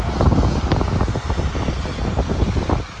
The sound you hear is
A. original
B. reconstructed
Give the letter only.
A